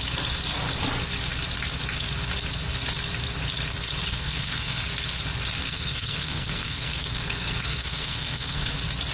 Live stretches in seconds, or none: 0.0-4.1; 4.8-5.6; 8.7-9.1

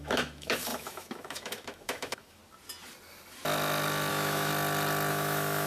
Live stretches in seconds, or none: 2.4-4.1; 4.5-5.1

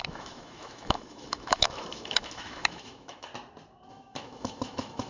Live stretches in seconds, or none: 3.3-3.9